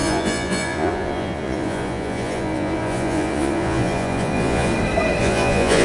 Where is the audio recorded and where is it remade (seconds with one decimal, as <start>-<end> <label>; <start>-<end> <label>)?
0.0-4.7 remade; 4.7-5.2 recorded; 5.2-5.8 remade